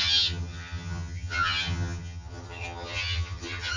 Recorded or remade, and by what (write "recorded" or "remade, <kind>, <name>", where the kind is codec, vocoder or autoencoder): remade, vocoder, HiFi-GAN